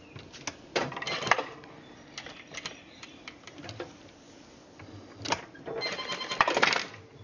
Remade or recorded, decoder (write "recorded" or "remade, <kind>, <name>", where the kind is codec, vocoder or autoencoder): recorded